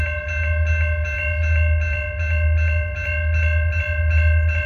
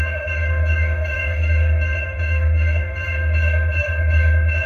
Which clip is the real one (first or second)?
first